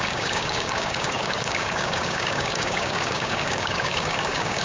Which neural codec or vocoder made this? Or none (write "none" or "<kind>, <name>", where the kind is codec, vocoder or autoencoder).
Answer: codec, DAC